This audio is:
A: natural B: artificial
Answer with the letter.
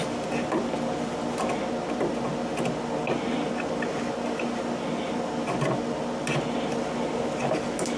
A